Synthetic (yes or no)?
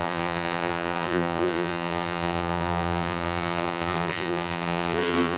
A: yes